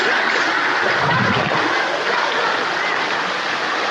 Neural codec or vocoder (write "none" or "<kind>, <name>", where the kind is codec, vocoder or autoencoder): none